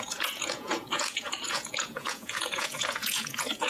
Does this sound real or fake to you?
fake